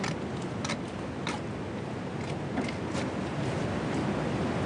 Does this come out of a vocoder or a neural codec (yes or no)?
no